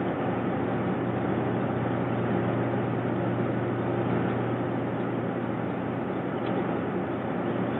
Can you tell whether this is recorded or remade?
recorded